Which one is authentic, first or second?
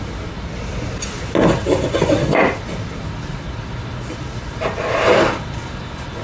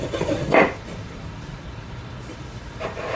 first